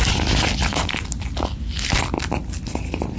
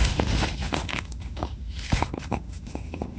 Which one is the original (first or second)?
first